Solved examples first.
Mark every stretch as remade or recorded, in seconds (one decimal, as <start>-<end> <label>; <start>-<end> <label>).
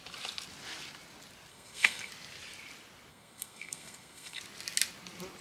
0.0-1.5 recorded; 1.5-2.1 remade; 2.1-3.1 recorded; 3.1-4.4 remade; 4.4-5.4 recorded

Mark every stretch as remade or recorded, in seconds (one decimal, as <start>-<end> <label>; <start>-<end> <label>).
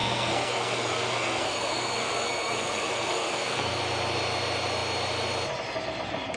0.0-3.8 remade; 3.8-6.4 recorded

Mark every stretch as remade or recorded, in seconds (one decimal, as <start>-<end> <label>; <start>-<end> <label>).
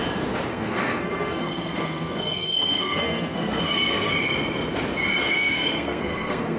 0.0-0.5 recorded; 0.5-4.1 remade; 4.1-5.2 recorded; 5.2-6.6 remade